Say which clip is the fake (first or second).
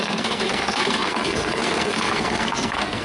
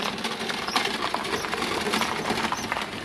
first